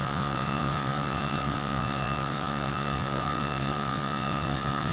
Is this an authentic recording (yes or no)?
no